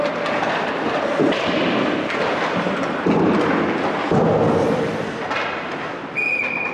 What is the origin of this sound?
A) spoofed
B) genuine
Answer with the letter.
B